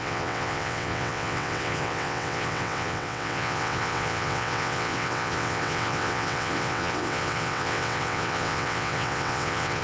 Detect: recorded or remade remade